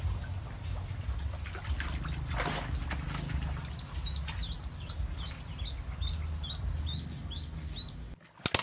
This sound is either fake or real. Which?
real